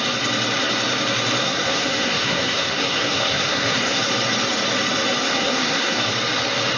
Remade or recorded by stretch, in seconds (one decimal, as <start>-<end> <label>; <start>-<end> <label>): 0.0-1.4 recorded; 1.4-4.0 remade; 4.0-5.2 recorded; 5.2-6.1 remade; 6.1-6.8 recorded